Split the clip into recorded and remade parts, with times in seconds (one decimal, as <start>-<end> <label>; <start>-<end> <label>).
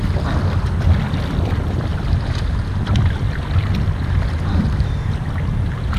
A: 0.0-6.0 recorded